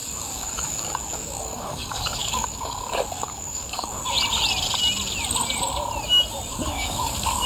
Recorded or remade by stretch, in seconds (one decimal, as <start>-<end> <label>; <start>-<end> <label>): 0.0-4.0 remade; 4.0-6.5 recorded; 6.5-7.5 remade